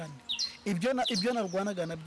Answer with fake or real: real